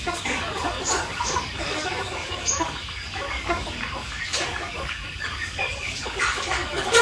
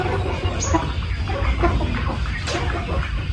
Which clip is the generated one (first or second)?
first